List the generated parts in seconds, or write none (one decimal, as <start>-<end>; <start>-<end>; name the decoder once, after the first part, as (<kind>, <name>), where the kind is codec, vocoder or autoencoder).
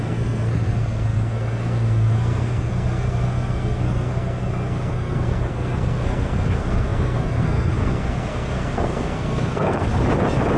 0.0-9.9 (codec, SNAC)